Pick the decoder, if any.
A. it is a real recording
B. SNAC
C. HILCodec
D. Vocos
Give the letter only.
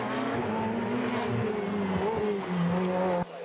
A